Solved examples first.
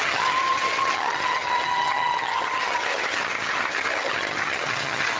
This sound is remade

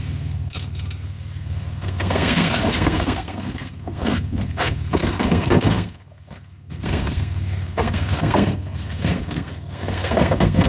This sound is remade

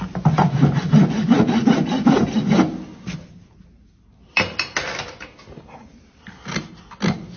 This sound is recorded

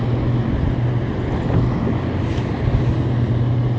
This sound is recorded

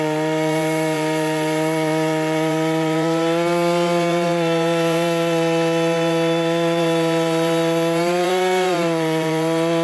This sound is remade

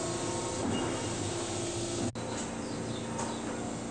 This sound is recorded